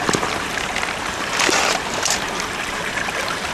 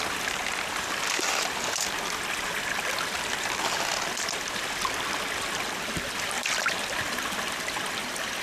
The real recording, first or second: second